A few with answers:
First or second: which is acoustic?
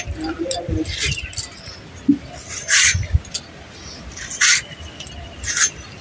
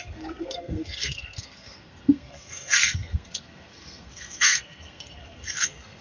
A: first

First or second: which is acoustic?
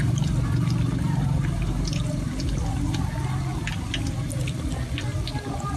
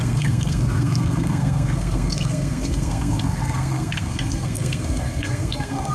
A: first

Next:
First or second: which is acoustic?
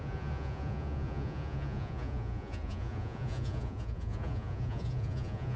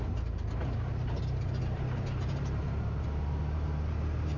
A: second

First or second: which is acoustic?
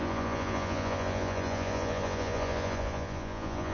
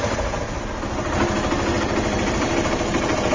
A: second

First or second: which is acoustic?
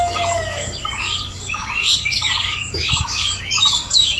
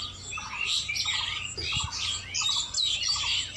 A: second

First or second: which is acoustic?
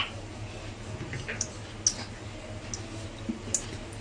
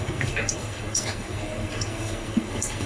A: first